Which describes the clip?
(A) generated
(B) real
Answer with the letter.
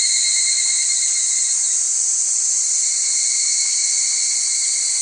B